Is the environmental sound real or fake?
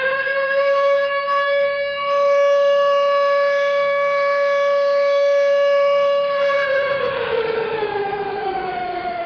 fake